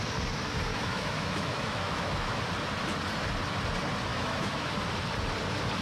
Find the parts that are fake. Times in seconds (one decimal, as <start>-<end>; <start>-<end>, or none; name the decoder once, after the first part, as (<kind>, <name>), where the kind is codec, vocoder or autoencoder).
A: 0.7-2.4 (autoencoder, DAC-VAE); 4.1-4.7